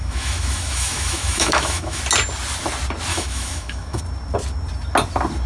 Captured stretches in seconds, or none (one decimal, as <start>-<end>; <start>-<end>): 2.0-3.1; 4.0-5.5